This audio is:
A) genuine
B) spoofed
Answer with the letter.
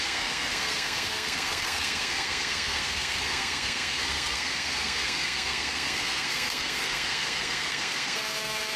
B